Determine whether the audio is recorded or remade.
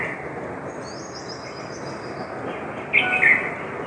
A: recorded